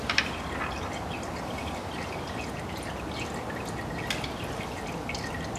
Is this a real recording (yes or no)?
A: yes